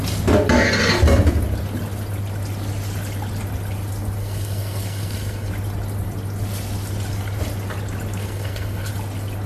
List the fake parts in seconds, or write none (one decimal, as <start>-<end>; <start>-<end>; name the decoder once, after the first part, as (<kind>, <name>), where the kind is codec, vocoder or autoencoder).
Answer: 4.2-5.5 (codec, SNAC); 8.2-8.9